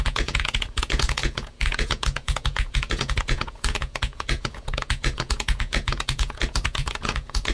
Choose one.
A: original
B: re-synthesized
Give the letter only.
B